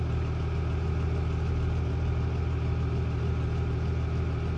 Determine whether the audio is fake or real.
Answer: real